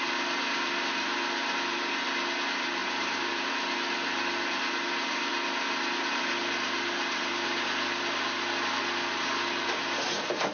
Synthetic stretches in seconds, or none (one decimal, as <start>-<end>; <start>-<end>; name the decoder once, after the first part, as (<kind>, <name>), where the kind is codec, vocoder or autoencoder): 2.8-3.5 (vocoder, BigVGAN v2)